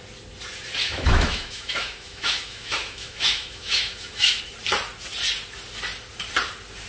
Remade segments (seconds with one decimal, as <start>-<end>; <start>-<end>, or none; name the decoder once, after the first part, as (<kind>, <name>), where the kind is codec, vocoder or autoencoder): 0.8-4.4 (autoencoder, DAC-VAE)